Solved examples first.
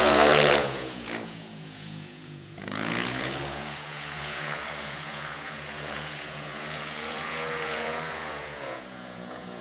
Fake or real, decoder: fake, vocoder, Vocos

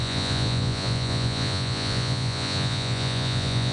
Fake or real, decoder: fake, vocoder, Vocos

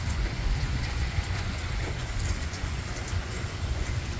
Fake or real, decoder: fake, vocoder, Vocos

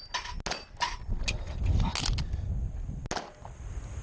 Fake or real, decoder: real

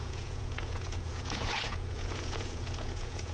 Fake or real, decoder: fake, vocoder, Vocos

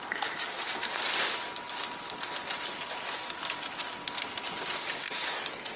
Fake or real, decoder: real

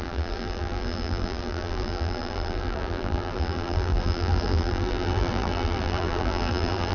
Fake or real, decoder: fake, vocoder, BigVGAN v2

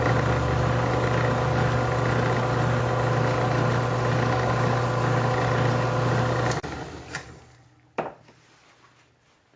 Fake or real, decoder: real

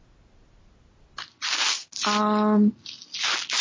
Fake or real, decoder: real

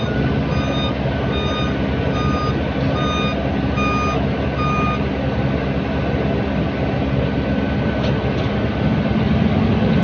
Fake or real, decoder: real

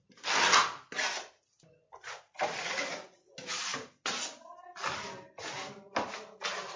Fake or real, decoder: real